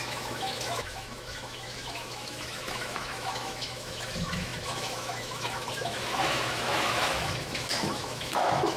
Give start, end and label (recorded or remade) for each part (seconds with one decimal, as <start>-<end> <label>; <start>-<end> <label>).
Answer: 0.0-8.8 remade